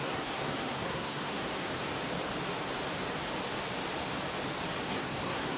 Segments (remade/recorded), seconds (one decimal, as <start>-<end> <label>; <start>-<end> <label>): 0.0-1.8 remade; 1.8-4.8 recorded; 4.8-5.6 remade